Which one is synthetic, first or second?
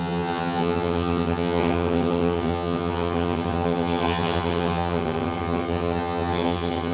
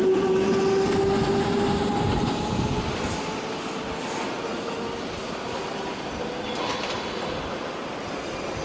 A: first